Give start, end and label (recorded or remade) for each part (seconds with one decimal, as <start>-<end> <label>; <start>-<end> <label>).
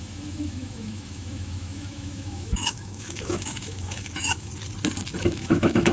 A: 0.0-4.5 remade; 4.5-5.2 recorded; 5.2-5.9 remade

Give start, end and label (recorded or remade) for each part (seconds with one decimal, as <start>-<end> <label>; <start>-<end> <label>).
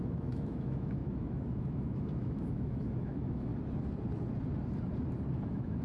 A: 0.0-3.5 remade; 3.5-5.3 recorded; 5.3-5.8 remade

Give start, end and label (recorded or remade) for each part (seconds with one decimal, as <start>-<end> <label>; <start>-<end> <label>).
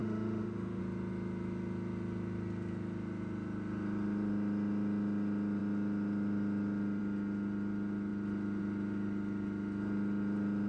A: 0.0-0.8 remade; 0.8-10.7 recorded